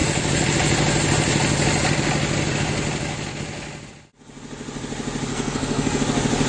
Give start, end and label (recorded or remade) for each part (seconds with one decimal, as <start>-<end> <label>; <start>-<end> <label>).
0.0-5.3 recorded; 5.3-6.0 remade; 6.0-6.5 recorded